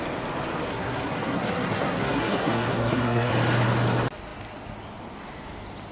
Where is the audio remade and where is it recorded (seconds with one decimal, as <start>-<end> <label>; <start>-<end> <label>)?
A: 0.0-0.7 recorded; 0.7-3.3 remade; 3.3-5.9 recorded